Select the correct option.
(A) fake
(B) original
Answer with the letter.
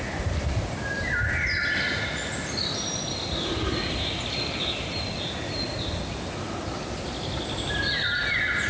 B